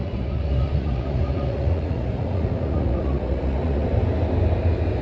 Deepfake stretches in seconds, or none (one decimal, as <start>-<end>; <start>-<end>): 0.0-3.9